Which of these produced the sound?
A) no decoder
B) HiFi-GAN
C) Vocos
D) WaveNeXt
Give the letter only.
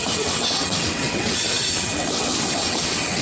D